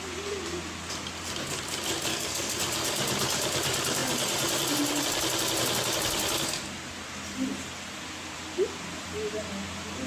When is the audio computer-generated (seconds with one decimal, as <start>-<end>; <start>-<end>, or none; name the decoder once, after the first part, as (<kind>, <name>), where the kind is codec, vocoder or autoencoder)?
2.1-2.6 (codec, SNAC)